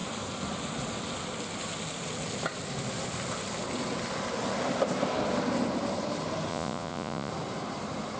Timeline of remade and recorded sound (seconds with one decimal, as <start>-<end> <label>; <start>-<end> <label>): 0.0-6.5 recorded; 6.5-7.3 remade; 7.3-8.2 recorded